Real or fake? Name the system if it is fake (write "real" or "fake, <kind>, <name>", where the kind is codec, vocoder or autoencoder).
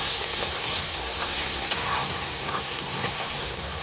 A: fake, codec, SNAC